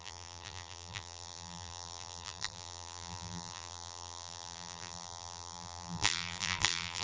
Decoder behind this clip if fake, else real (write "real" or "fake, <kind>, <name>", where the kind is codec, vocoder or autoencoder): fake, vocoder, BigVGAN v2